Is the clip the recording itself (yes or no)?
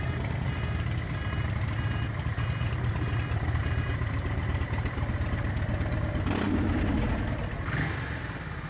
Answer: yes